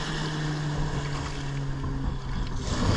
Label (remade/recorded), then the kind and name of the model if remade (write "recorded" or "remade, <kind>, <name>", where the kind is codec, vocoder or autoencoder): recorded